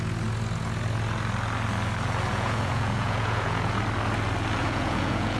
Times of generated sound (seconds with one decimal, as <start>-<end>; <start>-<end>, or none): 2.3-3.7; 4.6-5.4